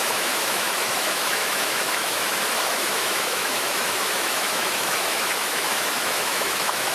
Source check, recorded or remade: remade